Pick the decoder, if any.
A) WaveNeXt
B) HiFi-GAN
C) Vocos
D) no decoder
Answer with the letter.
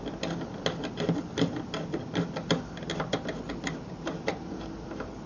D